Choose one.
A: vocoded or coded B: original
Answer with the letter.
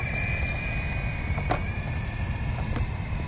B